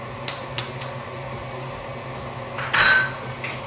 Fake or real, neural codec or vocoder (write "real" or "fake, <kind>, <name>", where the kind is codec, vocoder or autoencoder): real